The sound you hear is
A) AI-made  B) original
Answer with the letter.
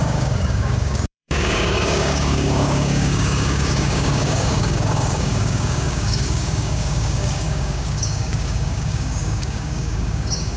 A